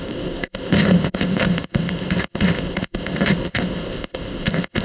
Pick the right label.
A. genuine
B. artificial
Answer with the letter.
B